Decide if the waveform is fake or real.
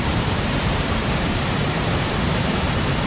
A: fake